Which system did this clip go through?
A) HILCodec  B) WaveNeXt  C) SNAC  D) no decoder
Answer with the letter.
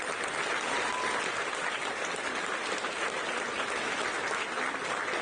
D